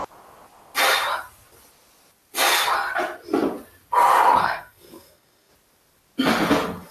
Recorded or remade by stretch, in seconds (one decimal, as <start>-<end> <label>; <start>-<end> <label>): 0.0-4.4 recorded; 4.4-5.5 remade; 5.5-6.9 recorded